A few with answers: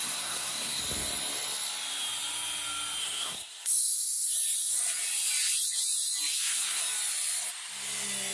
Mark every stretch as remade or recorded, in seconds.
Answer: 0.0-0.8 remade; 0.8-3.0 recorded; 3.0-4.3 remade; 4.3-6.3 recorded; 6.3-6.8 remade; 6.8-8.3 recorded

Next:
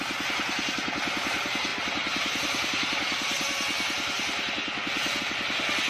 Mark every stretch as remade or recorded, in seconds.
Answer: 0.0-5.9 recorded

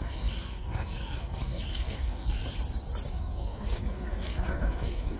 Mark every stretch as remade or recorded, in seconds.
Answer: 0.0-2.4 remade; 2.4-3.1 recorded; 3.1-5.2 remade

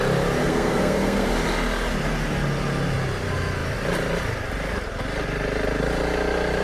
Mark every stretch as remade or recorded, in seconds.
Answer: 0.0-0.4 recorded; 0.4-1.3 remade; 1.3-6.6 recorded